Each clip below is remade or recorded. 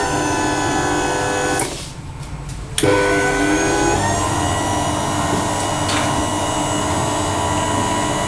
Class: recorded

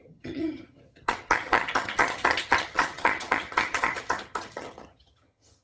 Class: remade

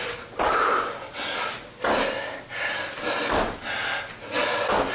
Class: recorded